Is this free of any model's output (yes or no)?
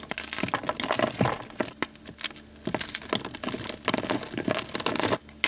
yes